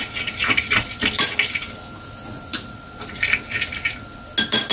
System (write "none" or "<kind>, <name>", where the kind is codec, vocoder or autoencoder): none